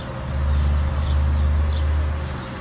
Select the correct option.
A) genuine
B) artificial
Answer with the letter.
A